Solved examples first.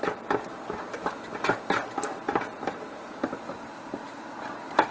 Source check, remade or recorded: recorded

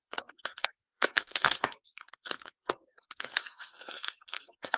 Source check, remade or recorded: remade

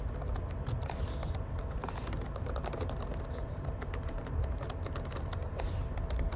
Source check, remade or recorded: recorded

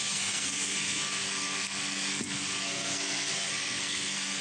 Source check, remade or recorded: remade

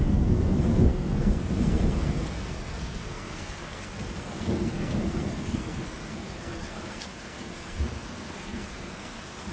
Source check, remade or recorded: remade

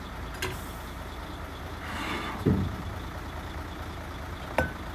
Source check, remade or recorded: recorded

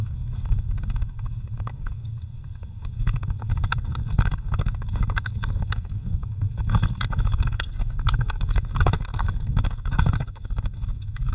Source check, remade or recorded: remade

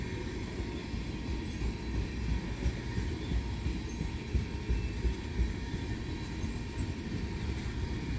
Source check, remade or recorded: recorded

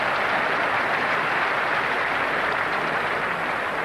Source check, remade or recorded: recorded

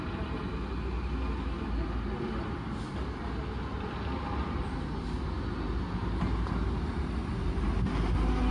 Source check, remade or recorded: recorded